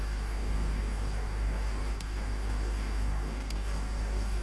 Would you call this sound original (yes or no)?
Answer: no